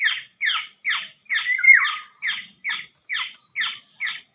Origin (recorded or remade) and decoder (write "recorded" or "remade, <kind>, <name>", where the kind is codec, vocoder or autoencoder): recorded